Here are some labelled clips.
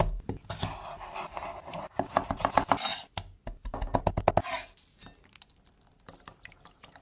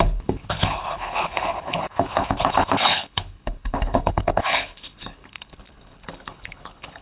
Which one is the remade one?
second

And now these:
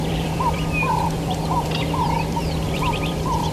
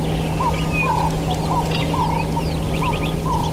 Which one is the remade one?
first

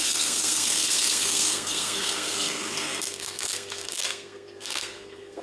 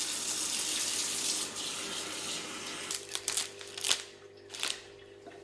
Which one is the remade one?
first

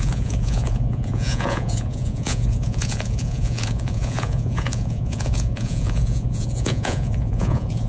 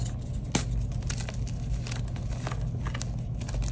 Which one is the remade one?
first